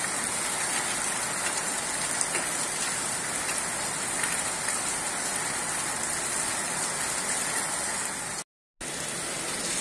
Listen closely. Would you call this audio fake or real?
real